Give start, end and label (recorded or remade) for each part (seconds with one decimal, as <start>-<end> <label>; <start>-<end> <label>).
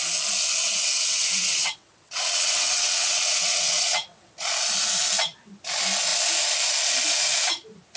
0.0-0.6 recorded; 0.6-4.3 remade; 4.3-8.0 recorded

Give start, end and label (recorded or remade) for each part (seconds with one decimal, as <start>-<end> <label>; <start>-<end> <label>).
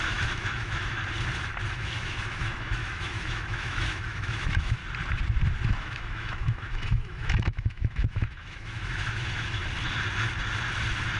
0.0-1.0 remade; 1.0-1.7 recorded; 1.7-4.8 remade; 4.8-5.8 recorded; 5.8-9.6 remade; 9.6-11.2 recorded